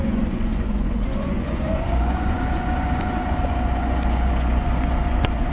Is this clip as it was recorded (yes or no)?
no